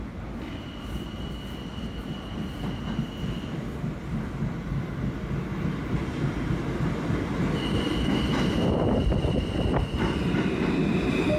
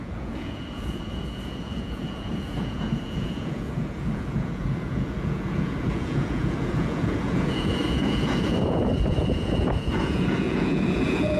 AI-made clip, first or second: second